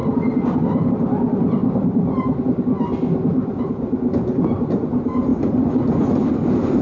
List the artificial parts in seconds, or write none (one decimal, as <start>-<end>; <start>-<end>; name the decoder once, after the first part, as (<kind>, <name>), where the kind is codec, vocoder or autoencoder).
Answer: 0.0-0.9 (vocoder, BigVGAN v2); 1.6-2.4; 3.3-4.8; 5.3-6.2